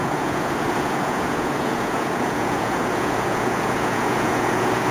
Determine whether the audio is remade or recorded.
remade